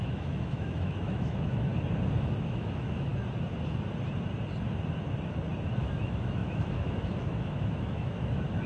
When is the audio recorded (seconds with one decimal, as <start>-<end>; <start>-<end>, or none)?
1.7-2.4; 3.1-5.8